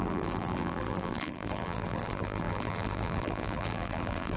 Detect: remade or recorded remade